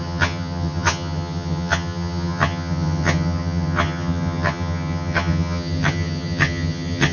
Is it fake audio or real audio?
fake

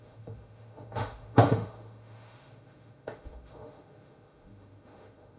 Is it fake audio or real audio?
fake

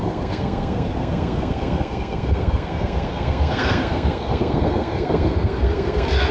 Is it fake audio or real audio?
fake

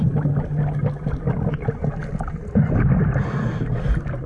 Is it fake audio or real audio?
real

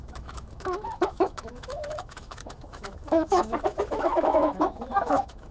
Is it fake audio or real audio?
fake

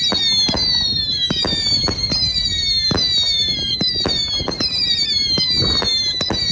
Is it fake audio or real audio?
real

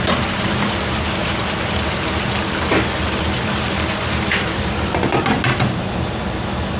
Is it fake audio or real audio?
real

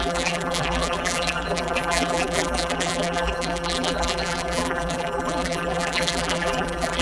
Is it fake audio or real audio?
fake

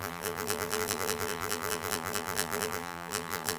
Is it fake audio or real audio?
fake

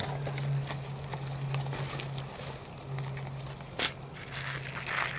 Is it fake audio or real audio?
real